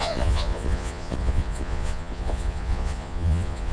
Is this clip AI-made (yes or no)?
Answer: yes